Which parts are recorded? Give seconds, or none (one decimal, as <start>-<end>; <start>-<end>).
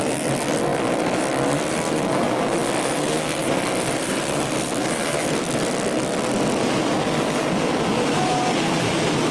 0.0-9.3